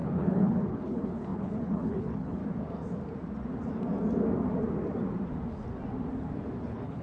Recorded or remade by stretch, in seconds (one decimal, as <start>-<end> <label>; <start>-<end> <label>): 0.0-2.4 remade; 2.4-6.6 recorded; 6.6-7.0 remade